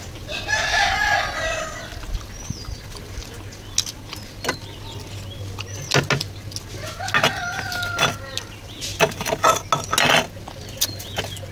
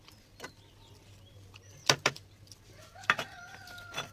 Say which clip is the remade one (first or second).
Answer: second